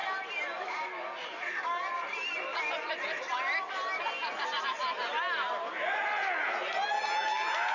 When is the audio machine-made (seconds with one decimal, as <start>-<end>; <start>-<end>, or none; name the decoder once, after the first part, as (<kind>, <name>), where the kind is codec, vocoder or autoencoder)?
none